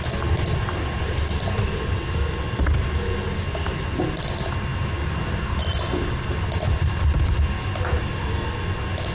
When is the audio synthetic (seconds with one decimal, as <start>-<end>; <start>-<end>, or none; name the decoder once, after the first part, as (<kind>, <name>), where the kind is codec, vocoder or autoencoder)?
none